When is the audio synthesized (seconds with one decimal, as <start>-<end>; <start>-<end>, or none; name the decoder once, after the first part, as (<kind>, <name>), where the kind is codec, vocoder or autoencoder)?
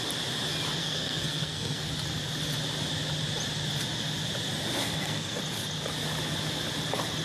0.8-1.9 (codec, SNAC); 4.8-5.4